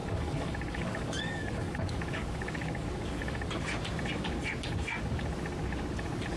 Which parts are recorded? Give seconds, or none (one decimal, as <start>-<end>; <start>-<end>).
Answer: 3.8-6.4